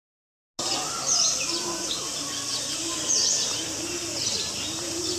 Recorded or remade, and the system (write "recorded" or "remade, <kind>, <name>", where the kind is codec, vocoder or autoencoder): recorded